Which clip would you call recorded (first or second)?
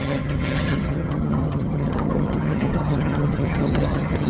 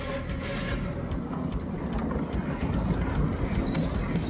second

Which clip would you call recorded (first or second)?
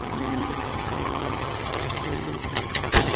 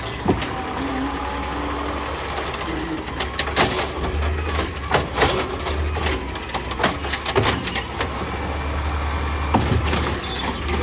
second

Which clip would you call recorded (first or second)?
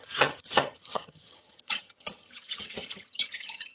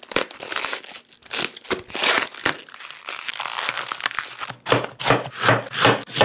second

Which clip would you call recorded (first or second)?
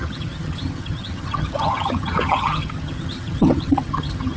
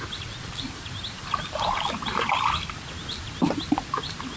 second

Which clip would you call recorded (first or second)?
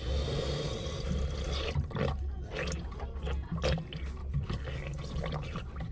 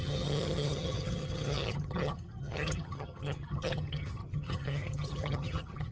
first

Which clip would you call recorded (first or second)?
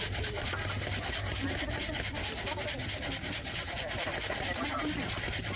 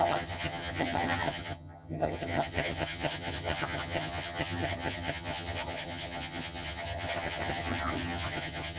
first